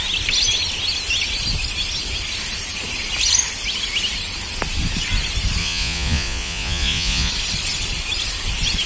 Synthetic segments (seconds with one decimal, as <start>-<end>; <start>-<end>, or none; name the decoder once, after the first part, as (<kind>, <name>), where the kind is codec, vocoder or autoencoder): 5.6-7.3 (vocoder, Vocos)